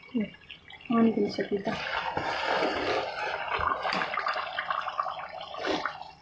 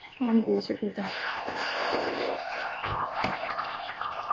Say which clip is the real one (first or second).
first